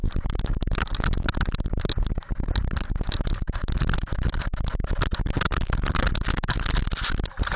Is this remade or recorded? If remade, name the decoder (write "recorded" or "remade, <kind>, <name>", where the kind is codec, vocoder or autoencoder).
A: recorded